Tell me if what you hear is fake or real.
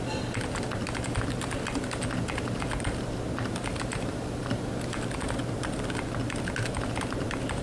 real